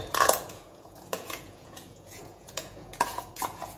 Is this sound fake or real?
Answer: fake